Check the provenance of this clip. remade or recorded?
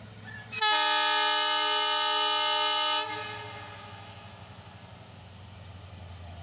recorded